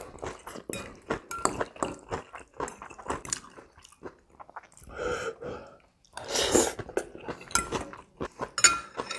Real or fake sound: real